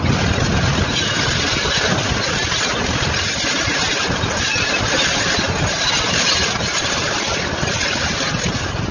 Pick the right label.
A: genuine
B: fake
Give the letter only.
A